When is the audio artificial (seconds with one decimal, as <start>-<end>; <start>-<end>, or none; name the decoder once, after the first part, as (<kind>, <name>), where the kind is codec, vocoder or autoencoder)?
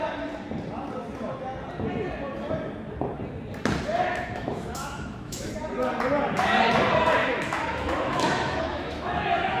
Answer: 3.9-5.5 (autoencoder, DAC-VAE); 7.2-9.6